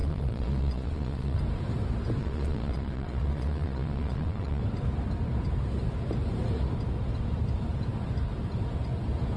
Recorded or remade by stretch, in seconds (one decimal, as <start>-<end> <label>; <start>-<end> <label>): 0.0-1.4 remade; 1.4-2.2 recorded; 2.2-4.6 remade; 4.6-9.4 recorded